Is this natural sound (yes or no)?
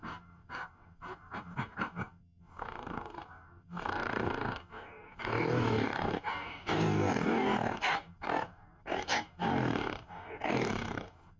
no